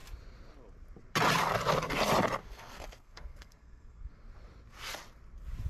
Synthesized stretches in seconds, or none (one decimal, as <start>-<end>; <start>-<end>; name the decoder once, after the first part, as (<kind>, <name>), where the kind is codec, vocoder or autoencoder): 2.4-4.1 (codec, SNAC)